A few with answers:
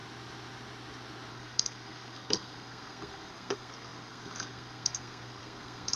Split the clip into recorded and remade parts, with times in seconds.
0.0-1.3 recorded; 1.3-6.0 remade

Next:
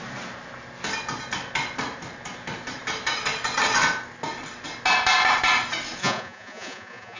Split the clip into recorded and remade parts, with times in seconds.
0.0-6.0 recorded; 6.0-7.2 remade

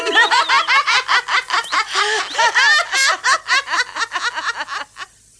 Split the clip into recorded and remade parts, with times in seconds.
0.0-5.4 recorded